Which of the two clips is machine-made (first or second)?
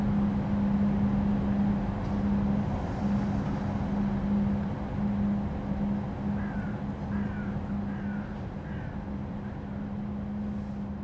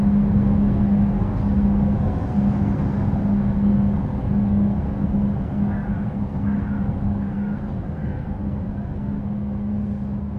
second